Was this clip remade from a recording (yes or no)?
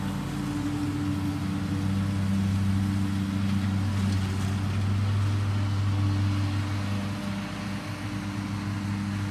no